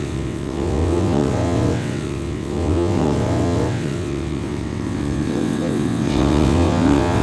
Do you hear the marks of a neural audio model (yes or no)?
yes